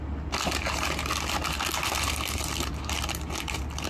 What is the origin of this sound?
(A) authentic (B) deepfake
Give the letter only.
A